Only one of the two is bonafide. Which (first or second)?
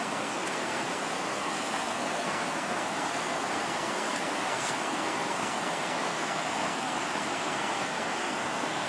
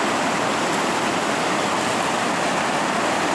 second